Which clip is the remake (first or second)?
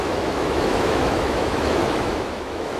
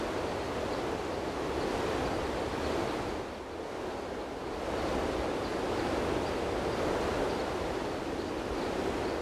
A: first